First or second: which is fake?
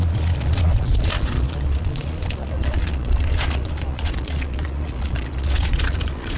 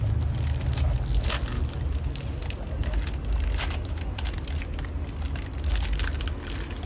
first